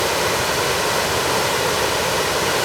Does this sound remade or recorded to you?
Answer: remade